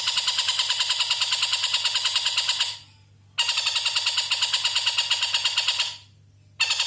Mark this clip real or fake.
real